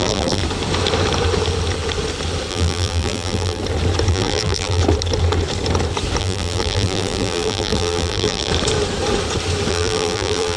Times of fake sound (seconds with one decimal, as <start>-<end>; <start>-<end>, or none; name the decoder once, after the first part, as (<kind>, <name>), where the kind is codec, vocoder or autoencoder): 0.0-0.4 (vocoder, BigVGAN v2); 2.5-3.6; 4.1-4.8; 6.2-8.5; 9.7-10.6